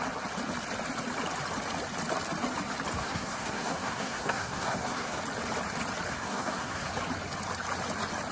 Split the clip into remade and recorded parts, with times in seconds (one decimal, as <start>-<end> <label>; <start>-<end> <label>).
0.0-3.0 recorded; 3.0-5.2 remade; 5.2-6.1 recorded; 6.1-6.9 remade; 6.9-8.3 recorded